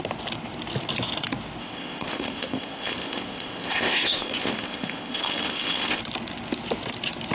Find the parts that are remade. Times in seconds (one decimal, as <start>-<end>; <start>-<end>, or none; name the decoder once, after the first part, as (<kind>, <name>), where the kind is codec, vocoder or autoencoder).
1.6-6.0 (codec, ZipCodec)